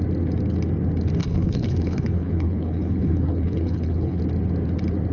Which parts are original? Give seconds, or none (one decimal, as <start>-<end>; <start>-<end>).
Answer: 0.0-1.3; 4.2-5.1